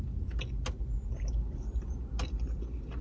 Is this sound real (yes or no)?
yes